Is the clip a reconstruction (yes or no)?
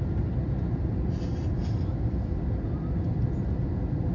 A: no